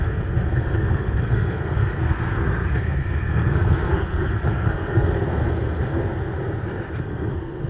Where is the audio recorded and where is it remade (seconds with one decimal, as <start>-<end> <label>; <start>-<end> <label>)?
0.0-6.1 remade; 6.1-7.0 recorded; 7.0-7.7 remade